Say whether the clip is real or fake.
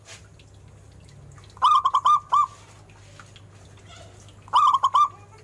real